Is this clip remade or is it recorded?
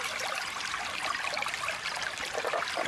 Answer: recorded